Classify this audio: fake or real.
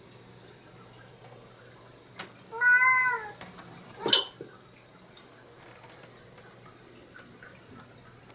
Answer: real